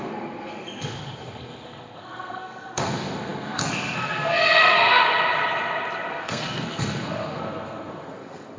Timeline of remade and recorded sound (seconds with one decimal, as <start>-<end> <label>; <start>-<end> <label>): 0.0-5.0 remade; 5.0-6.1 recorded; 6.1-8.6 remade